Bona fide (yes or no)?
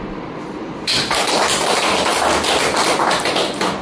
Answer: yes